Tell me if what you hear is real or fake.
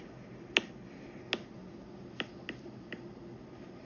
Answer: real